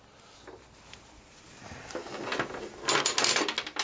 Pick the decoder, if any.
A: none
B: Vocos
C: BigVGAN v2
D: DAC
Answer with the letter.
A